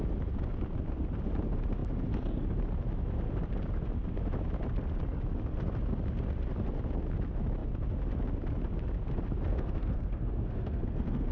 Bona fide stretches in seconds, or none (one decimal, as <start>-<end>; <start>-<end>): 0.0-9.5